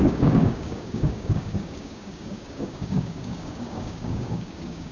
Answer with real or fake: fake